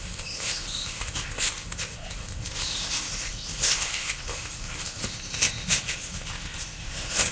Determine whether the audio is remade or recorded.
remade